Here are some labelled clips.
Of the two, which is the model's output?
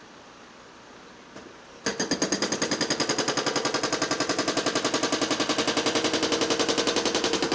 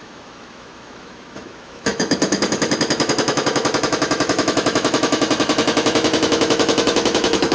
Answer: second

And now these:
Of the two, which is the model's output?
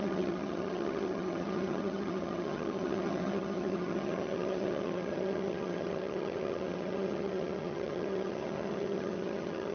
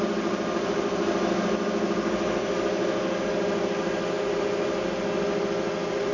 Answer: first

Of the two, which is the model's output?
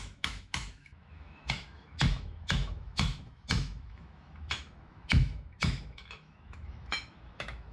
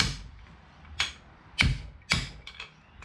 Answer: first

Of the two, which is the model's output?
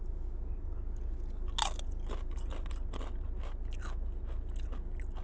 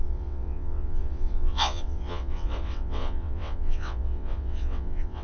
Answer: second